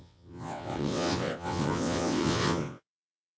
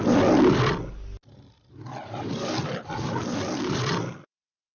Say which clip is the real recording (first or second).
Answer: second